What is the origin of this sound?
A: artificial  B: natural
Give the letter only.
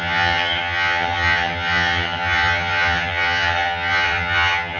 A